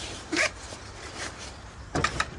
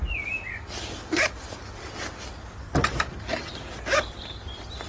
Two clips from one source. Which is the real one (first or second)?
second